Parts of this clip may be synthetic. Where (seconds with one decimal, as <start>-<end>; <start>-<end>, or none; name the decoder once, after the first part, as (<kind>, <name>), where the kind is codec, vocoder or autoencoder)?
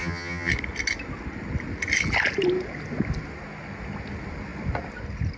0.0-0.5 (vocoder, HiFi-GAN)